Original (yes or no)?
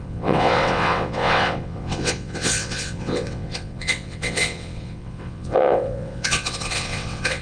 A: no